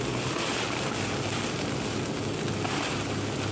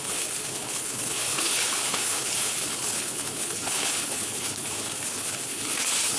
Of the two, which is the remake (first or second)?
second